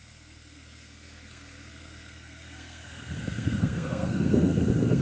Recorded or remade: remade